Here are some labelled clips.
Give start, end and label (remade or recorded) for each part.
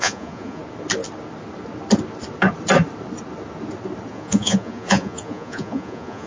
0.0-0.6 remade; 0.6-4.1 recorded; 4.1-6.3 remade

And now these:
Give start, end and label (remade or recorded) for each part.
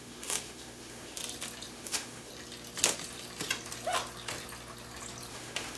0.0-1.2 remade; 1.2-1.7 recorded; 1.7-2.3 remade; 2.3-5.3 recorded; 5.3-5.8 remade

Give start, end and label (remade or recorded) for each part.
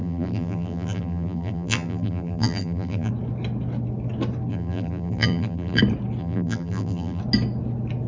0.0-3.1 remade; 3.1-4.5 recorded; 4.5-5.8 remade; 5.8-6.2 recorded; 6.2-7.2 remade; 7.2-8.1 recorded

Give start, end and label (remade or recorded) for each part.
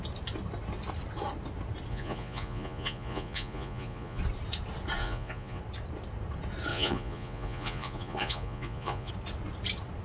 0.0-1.9 recorded; 1.9-4.2 remade; 4.2-5.0 recorded; 5.0-5.6 remade; 5.6-6.7 recorded; 6.7-9.1 remade; 9.1-10.0 recorded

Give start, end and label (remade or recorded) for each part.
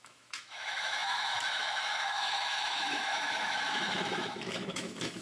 0.0-5.2 remade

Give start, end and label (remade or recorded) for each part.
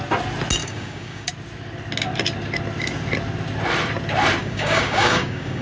0.0-0.6 recorded; 0.6-1.3 remade; 1.3-4.4 recorded; 4.4-5.6 remade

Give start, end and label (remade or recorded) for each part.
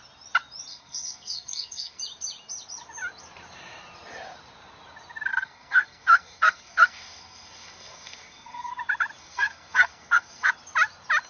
0.0-0.7 recorded; 0.7-2.0 remade; 2.0-5.3 recorded; 5.3-8.7 remade; 8.7-9.2 recorded; 9.2-10.5 remade; 10.5-11.3 recorded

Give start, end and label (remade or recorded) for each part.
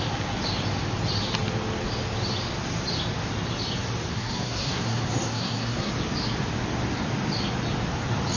0.0-4.1 recorded; 4.1-5.9 remade; 5.9-8.4 recorded